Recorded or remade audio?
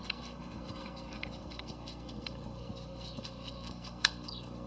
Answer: remade